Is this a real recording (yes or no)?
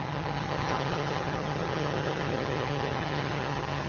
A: no